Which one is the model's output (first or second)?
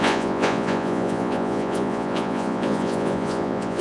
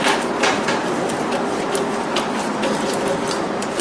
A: first